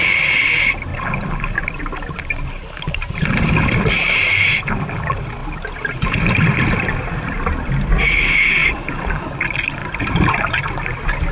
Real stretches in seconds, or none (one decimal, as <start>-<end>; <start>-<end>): 0.0-8.6; 9.2-9.8; 10.6-11.3